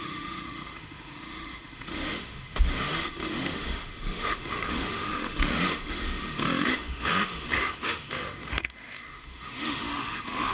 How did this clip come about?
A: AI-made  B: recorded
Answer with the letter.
A